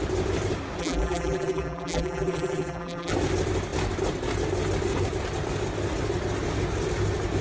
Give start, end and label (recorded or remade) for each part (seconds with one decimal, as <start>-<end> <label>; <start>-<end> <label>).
0.0-0.8 recorded; 0.8-3.1 remade; 3.1-7.4 recorded